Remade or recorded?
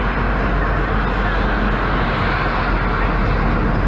recorded